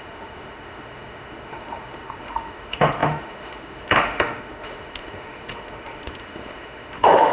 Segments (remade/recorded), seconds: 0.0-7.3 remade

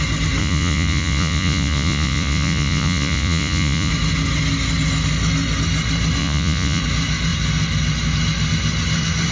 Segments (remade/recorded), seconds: 0.0-0.4 recorded; 0.4-3.9 remade; 3.9-6.2 recorded; 6.2-6.8 remade; 6.8-9.3 recorded

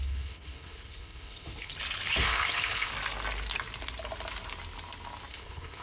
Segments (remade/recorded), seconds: 0.0-1.7 remade; 1.7-2.2 recorded; 2.2-2.9 remade; 2.9-5.3 recorded; 5.3-5.8 remade

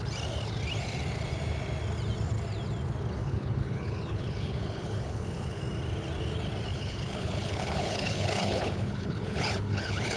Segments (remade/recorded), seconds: 0.0-3.2 recorded; 3.2-5.6 remade; 5.6-6.7 recorded; 6.7-10.2 remade